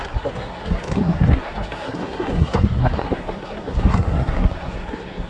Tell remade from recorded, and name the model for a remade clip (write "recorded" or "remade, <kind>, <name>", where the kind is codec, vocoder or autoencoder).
remade, codec, SNAC